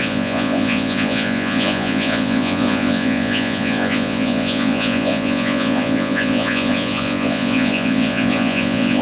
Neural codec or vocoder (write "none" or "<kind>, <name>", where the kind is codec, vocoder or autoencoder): vocoder, Vocos